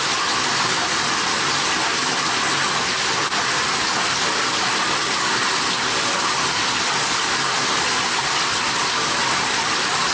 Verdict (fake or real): real